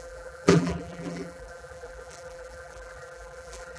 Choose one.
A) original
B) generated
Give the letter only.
B